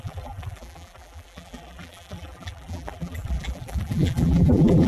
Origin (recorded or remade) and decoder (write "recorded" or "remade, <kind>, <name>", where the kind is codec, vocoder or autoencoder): remade, vocoder, BigVGAN v2